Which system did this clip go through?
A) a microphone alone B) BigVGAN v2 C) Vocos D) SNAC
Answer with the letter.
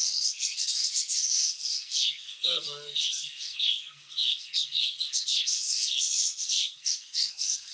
D